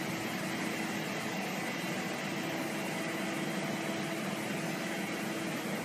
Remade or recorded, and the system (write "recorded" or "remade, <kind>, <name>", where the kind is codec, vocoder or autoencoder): recorded